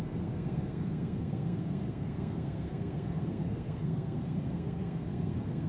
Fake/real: fake